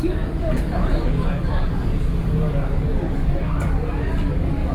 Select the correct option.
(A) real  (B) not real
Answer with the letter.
B